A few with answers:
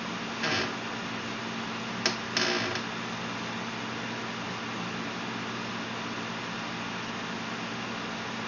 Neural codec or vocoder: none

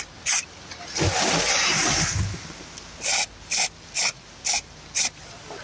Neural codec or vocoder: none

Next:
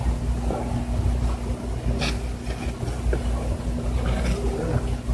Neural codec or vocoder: none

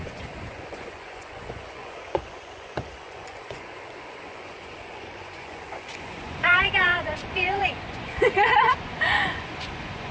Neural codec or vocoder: vocoder, Vocos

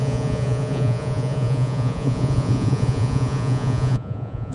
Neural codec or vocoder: vocoder, Vocos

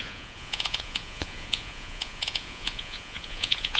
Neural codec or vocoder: vocoder, Vocos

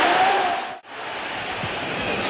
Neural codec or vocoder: none